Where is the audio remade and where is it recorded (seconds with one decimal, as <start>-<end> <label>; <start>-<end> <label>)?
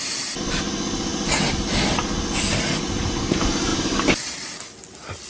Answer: 0.0-5.3 recorded